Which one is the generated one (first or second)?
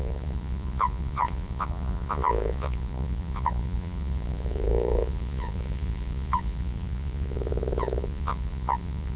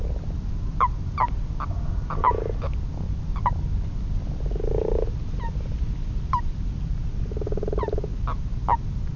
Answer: first